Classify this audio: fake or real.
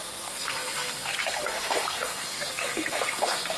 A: fake